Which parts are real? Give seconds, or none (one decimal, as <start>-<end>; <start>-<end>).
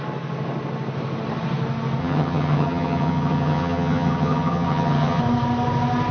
0.0-2.0; 5.2-6.1